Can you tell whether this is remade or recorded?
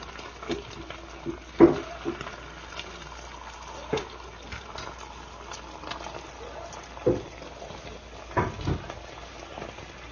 recorded